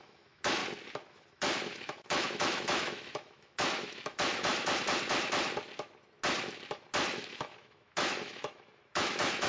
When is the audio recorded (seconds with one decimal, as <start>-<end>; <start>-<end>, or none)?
0.6-1.1; 4.5-7.1